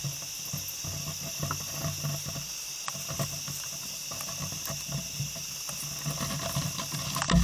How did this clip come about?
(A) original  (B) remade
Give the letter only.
A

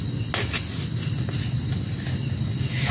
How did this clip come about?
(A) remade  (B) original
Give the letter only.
B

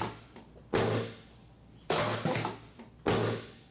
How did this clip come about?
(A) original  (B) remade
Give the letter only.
A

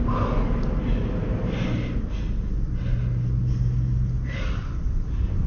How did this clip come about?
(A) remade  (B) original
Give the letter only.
B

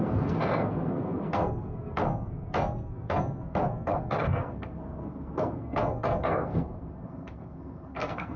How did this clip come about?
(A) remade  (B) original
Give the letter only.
A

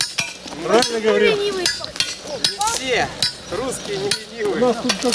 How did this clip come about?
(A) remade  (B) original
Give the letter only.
B